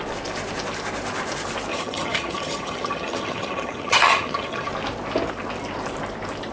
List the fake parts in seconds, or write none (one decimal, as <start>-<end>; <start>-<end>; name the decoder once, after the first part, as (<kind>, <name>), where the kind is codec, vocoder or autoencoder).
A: 1.7-4.7 (vocoder, HiFi-GAN)